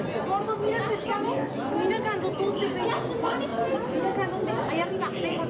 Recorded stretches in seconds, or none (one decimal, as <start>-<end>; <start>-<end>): 0.0-5.5